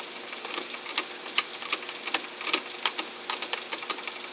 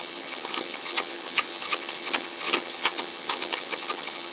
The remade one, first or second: second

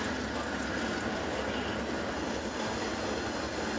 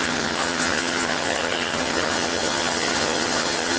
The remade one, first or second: second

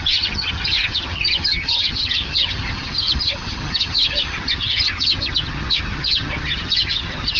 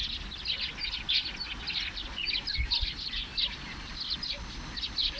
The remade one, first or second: first